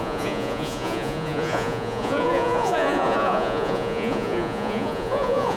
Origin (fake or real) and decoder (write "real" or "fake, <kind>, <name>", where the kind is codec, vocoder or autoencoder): fake, vocoder, Vocos